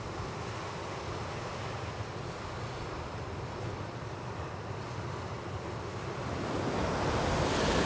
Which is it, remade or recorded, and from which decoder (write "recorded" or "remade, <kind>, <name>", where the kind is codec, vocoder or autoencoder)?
recorded